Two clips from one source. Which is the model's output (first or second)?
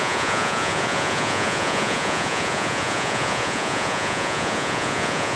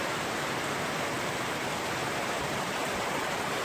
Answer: first